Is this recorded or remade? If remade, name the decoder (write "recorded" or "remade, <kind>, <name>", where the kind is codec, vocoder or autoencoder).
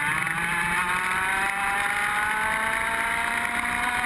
recorded